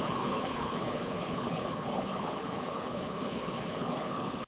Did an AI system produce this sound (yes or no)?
yes